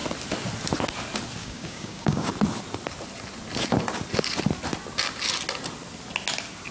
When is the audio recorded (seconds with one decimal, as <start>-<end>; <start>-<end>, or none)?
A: 0.0-1.4; 2.3-6.7